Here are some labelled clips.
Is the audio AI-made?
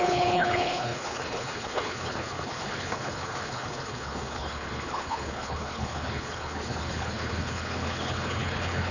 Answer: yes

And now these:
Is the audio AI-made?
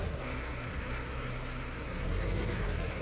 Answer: yes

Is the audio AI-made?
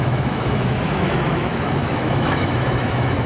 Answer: yes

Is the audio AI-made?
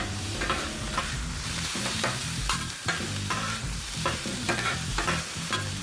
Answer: yes